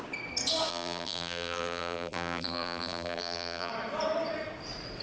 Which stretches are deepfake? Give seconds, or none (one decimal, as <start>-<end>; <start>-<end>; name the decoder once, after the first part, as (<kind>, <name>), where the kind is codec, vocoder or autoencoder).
0.7-3.7 (vocoder, BigVGAN v2)